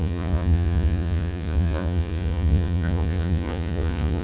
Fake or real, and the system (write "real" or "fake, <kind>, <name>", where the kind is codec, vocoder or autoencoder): fake, vocoder, Vocos